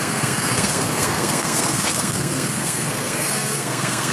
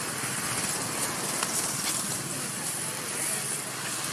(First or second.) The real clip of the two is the second